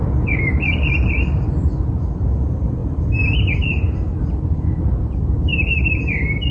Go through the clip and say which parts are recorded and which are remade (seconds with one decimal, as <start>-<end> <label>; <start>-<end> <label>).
0.0-6.5 remade